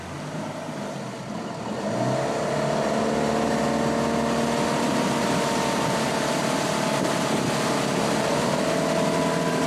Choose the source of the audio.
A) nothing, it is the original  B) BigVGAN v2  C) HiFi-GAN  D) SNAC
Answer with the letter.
A